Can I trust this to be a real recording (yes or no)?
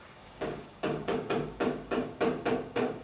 no